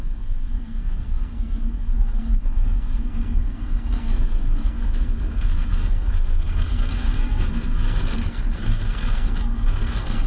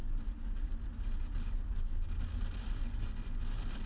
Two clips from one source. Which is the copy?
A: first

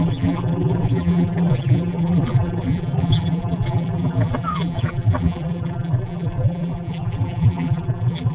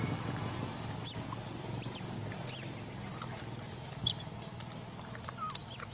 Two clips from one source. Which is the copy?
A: first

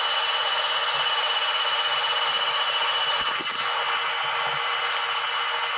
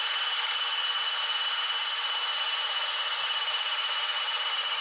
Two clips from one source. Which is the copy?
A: second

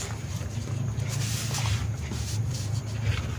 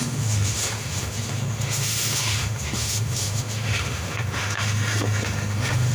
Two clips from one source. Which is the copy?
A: second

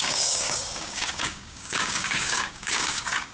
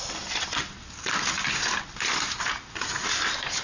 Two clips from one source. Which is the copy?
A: first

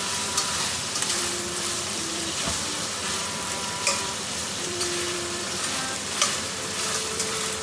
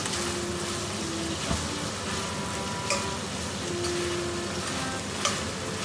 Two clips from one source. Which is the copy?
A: first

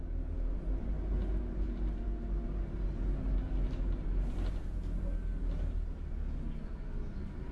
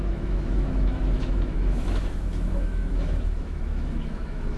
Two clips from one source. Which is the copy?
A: second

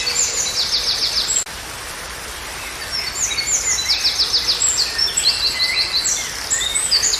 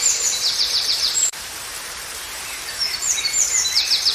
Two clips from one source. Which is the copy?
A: second